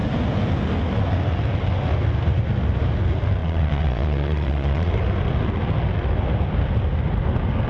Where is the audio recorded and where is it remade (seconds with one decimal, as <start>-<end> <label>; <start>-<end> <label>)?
0.0-3.4 recorded; 3.4-4.9 remade; 4.9-7.7 recorded